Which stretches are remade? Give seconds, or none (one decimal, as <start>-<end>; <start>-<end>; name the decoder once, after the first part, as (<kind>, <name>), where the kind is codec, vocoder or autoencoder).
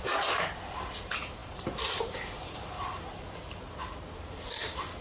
0.0-5.0 (vocoder, BigVGAN v2)